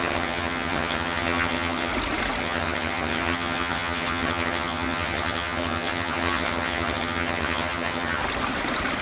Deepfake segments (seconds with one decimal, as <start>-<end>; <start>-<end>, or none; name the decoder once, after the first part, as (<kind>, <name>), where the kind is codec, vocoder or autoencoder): 0.0-1.9 (vocoder, HiFi-GAN); 2.4-8.2

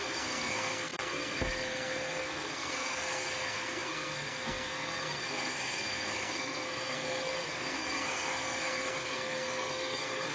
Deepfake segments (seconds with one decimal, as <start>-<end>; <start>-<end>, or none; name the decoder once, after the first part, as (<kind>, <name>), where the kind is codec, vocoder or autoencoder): 0.0-10.3 (codec, SNAC)

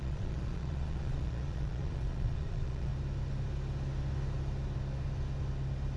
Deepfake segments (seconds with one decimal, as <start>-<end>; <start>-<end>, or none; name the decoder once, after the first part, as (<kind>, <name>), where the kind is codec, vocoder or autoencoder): 0.0-2.9 (vocoder, Vocos)

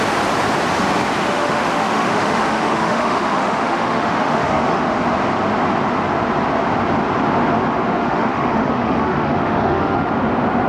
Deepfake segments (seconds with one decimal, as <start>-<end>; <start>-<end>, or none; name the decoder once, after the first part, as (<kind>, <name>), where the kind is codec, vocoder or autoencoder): 1.2-4.8 (autoencoder, DAC-VAE); 8.0-10.1

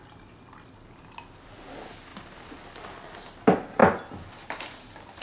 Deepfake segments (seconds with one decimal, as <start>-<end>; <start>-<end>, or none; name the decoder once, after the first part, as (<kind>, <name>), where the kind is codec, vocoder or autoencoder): none

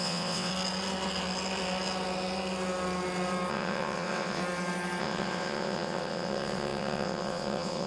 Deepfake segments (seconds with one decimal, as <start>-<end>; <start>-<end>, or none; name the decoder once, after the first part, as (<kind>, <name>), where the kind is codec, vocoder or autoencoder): 0.0-0.5 (vocoder, WaveNeXt); 3.5-4.4; 5.0-7.9